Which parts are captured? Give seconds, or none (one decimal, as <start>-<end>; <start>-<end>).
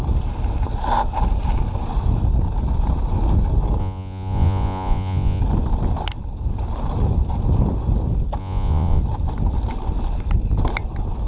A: 0.0-3.8; 5.4-8.4; 9.0-11.3